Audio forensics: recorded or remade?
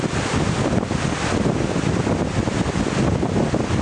recorded